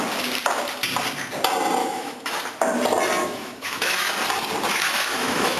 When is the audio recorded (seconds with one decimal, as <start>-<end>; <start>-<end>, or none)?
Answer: 0.0-1.8; 2.3-3.2; 4.1-4.7